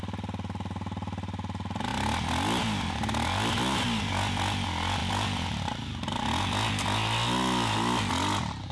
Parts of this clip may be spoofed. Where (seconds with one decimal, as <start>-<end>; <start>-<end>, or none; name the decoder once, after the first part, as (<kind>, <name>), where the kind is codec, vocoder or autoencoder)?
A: none